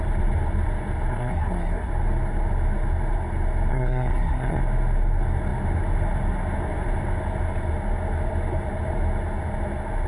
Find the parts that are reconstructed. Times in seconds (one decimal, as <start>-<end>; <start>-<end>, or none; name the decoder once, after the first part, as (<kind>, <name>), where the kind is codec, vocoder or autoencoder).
1.1-1.9 (codec, SNAC); 3.7-4.6